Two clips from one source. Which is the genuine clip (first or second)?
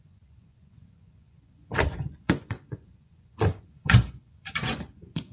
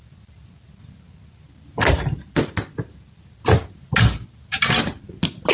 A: second